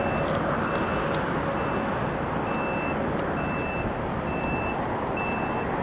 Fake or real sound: real